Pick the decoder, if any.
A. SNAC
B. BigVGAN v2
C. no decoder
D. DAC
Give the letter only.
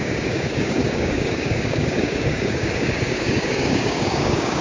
D